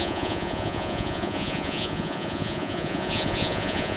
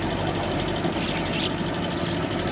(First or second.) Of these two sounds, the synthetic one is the first